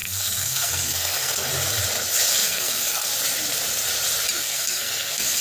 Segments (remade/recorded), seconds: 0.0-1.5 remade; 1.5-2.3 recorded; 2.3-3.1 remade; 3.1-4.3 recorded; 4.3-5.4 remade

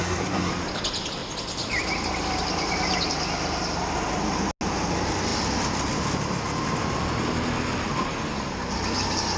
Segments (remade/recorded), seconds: 0.0-0.5 remade; 0.5-9.4 recorded

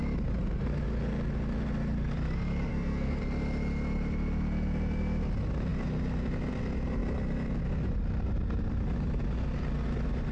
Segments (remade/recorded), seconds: 0.0-2.7 recorded; 2.7-3.2 remade; 3.2-10.3 recorded